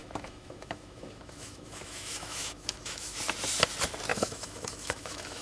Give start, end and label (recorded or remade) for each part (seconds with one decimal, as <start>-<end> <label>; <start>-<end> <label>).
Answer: 0.0-3.2 remade; 3.2-4.1 recorded; 4.1-5.4 remade